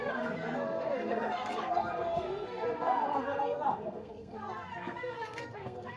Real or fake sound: fake